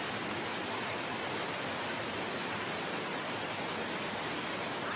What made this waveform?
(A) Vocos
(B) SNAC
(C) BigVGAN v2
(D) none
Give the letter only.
D